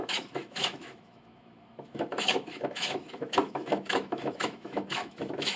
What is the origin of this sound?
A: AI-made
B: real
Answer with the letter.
A